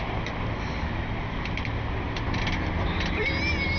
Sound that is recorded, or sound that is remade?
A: recorded